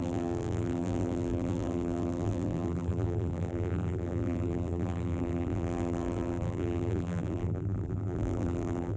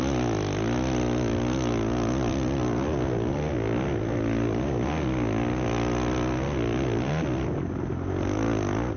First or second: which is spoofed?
first